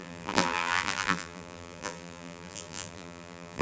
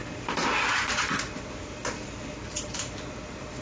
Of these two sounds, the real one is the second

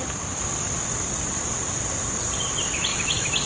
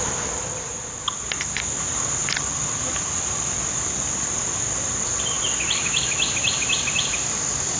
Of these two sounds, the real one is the second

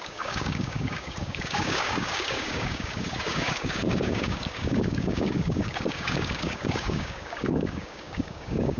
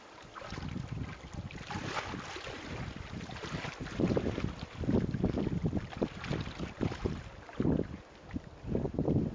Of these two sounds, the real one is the second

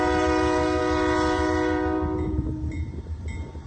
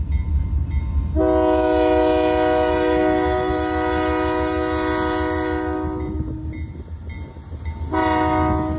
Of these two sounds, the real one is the second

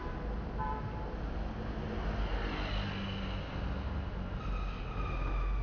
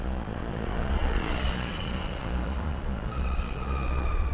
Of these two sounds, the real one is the first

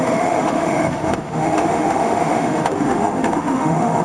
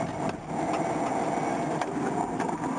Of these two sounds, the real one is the second